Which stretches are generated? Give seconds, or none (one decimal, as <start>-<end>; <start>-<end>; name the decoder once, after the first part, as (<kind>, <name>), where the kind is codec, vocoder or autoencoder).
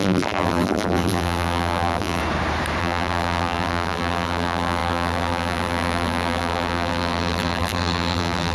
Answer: 0.0-2.2 (vocoder, BigVGAN v2); 2.8-8.5